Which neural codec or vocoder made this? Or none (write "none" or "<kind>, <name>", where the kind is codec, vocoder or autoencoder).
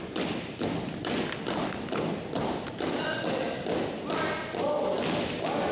none